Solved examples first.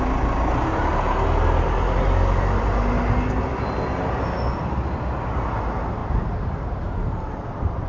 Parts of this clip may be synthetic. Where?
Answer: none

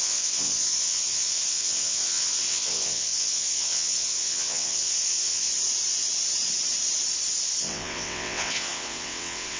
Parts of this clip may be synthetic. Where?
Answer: 0.0-5.5 (vocoder, WaveNeXt); 7.6-9.6

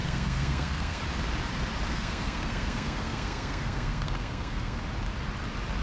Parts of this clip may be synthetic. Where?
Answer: 0.0-1.0 (codec, SNAC); 1.9-4.8

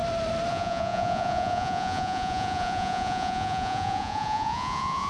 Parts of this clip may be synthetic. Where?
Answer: 0.5-5.1 (vocoder, Vocos)

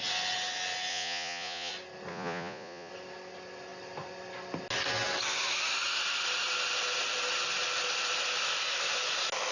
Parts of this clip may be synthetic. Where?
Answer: 0.9-1.7 (vocoder, Vocos); 2.1-2.9

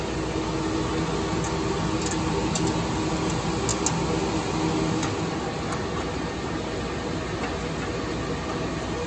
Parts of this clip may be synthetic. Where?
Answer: none

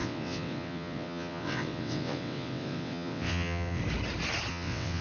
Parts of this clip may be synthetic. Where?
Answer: 0.0-3.8 (vocoder, WaveNeXt); 4.5-5.0